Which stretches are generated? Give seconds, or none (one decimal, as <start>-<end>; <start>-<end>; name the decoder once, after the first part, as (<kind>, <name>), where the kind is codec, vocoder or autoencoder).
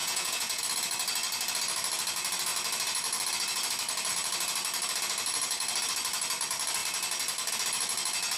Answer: 0.0-0.6 (vocoder, Vocos)